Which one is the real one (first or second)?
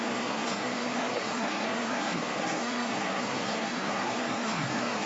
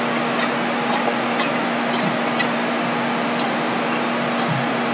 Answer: second